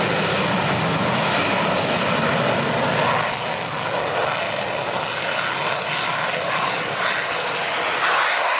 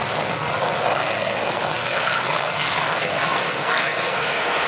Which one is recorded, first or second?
first